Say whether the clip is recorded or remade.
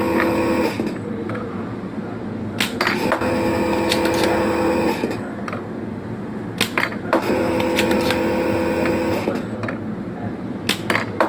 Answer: recorded